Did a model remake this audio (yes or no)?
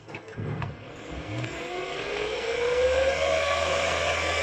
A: yes